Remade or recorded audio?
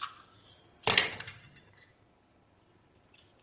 recorded